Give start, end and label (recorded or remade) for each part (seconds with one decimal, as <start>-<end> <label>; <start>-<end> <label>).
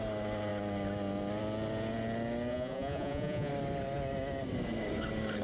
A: 0.0-2.5 recorded; 2.5-3.5 remade; 3.5-5.4 recorded